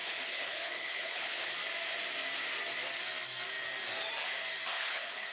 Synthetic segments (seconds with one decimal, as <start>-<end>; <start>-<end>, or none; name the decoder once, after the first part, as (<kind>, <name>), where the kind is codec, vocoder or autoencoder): 0.0-1.5 (codec, HILCodec); 4.7-5.3